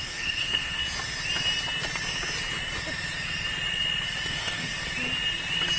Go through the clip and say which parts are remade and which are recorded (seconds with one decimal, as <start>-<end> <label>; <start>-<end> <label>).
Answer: 0.0-0.8 remade; 0.8-4.3 recorded; 4.3-4.7 remade; 4.7-5.8 recorded